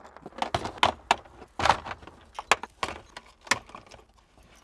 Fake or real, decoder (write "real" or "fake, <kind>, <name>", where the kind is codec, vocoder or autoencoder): real